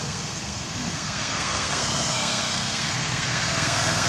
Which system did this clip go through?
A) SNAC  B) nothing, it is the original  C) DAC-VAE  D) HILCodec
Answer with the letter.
A